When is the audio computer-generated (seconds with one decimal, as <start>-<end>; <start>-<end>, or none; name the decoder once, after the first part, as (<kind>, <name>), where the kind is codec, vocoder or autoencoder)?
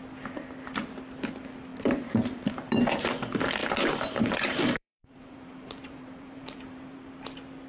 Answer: 1.7-2.8 (vocoder, BigVGAN v2); 3.6-7.1